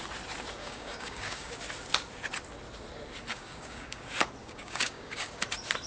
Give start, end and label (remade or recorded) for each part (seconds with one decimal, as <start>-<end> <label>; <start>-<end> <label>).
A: 0.0-0.6 recorded; 0.6-1.5 remade; 1.5-3.3 recorded; 3.3-4.0 remade; 4.0-4.4 recorded; 4.4-5.3 remade; 5.3-5.9 recorded